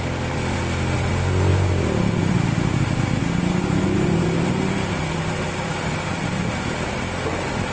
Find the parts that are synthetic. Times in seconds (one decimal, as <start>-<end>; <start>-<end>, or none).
none